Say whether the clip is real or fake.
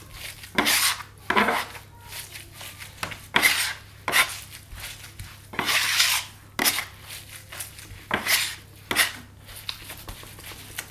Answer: real